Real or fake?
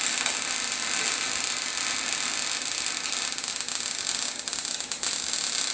real